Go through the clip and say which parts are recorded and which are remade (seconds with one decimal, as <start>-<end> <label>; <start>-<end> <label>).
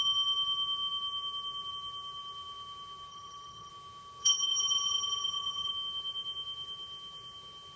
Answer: 0.0-3.1 recorded; 3.1-3.7 remade; 3.7-4.2 recorded; 4.2-5.7 remade; 5.7-7.8 recorded